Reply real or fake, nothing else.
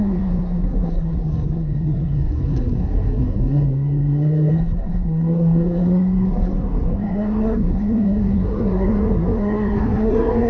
fake